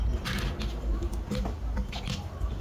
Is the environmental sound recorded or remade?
recorded